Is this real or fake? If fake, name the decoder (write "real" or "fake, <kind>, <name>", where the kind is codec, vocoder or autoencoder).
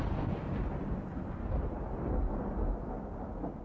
real